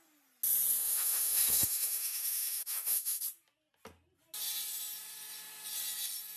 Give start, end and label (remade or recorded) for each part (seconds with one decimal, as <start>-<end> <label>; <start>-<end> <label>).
0.0-0.8 recorded; 0.8-3.2 remade; 3.2-6.4 recorded

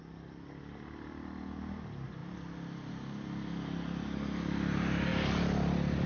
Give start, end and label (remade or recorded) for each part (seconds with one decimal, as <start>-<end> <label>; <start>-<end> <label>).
0.0-6.1 recorded

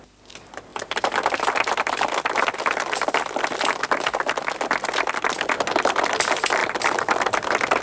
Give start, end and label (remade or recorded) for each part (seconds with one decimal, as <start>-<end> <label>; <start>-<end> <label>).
0.0-0.7 recorded; 0.7-3.4 remade; 3.4-6.6 recorded; 6.6-7.8 remade

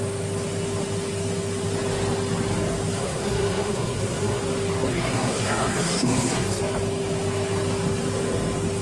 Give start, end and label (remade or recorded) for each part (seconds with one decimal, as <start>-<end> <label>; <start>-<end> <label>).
0.0-3.0 recorded; 3.0-4.4 remade; 4.4-4.9 recorded; 4.9-6.6 remade; 6.6-8.8 recorded